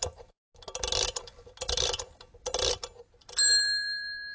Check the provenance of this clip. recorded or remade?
recorded